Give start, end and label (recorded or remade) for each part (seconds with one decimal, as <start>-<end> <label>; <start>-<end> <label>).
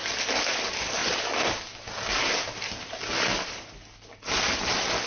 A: 0.0-5.1 recorded